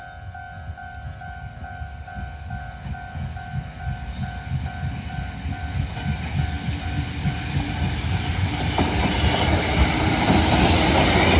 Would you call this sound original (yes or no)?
yes